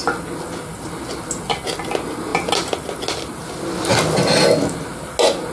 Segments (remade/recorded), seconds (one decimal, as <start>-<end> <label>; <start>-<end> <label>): 0.0-5.5 recorded